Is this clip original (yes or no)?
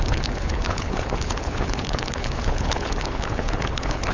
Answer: no